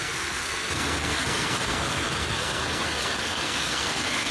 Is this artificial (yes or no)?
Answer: yes